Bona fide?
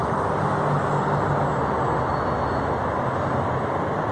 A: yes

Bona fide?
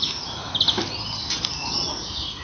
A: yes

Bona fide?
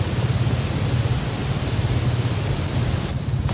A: yes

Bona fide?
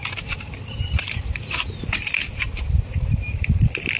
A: yes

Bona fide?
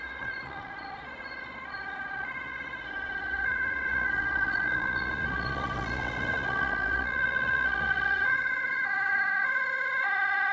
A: no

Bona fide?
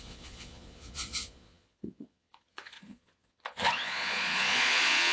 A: no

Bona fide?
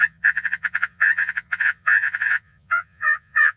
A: no